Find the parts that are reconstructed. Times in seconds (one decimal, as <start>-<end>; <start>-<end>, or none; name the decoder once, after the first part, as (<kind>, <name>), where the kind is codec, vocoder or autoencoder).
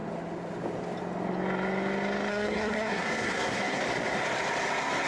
2.3-3.8 (codec, SNAC)